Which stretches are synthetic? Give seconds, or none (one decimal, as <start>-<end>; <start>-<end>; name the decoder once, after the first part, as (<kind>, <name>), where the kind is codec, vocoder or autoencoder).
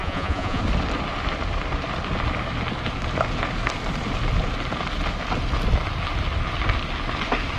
0.0-0.6 (vocoder, Vocos)